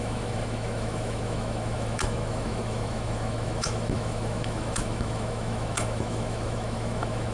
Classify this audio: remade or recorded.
remade